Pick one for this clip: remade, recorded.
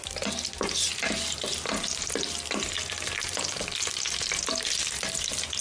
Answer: recorded